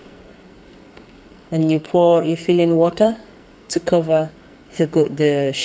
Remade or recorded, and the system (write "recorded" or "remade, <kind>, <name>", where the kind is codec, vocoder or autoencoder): remade, codec, SNAC